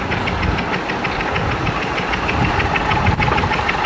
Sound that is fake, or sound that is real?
real